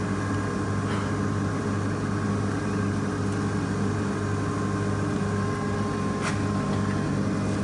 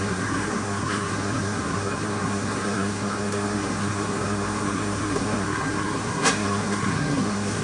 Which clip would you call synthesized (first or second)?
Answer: second